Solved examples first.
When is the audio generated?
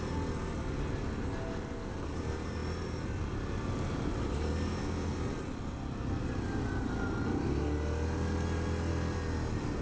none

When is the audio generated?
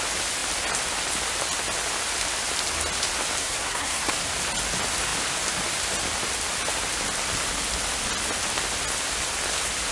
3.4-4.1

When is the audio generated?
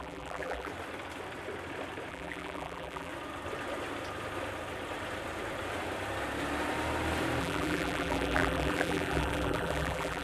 0.0-0.7; 2.1-3.1; 7.4-10.2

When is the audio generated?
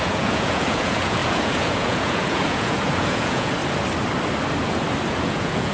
0.0-3.6; 5.1-5.7